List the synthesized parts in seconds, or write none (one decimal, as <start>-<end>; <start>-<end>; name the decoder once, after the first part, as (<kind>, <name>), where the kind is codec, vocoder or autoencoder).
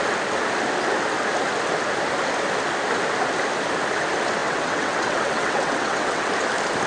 4.4-6.3 (vocoder, WaveNeXt)